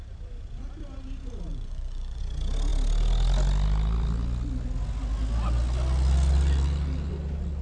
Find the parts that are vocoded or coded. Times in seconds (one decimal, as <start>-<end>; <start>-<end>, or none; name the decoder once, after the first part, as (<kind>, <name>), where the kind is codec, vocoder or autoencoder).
1.5-2.2 (vocoder, Vocos)